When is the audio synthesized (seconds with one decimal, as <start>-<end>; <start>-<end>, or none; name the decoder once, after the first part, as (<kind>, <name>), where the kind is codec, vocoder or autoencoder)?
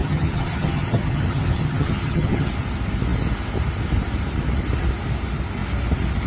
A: 0.0-2.5 (vocoder, HiFi-GAN)